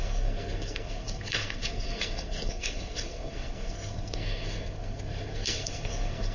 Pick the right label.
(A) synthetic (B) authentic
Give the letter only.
A